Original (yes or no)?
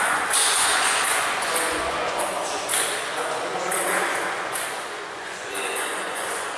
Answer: no